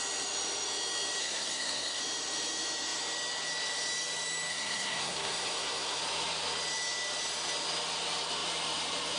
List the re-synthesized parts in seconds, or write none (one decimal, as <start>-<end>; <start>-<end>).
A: 1.2-2.0; 4.5-6.0